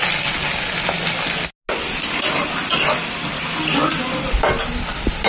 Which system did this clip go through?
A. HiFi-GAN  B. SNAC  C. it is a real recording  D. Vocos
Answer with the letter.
C